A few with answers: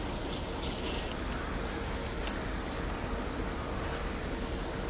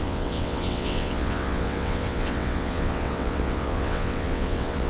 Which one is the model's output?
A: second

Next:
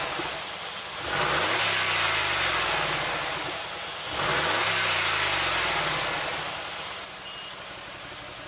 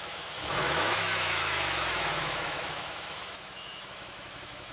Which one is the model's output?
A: second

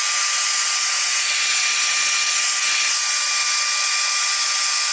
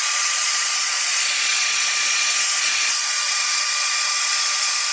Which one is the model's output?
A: second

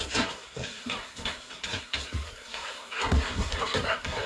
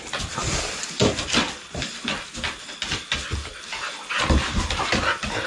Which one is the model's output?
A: first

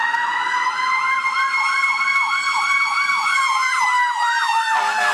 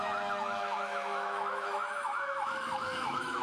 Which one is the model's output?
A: second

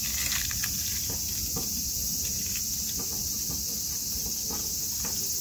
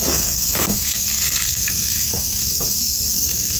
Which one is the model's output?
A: second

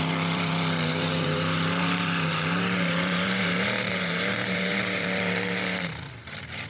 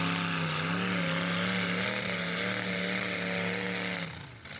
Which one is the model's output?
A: first